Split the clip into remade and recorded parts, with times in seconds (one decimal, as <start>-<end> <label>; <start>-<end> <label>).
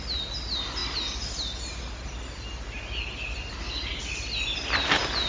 0.0-5.3 recorded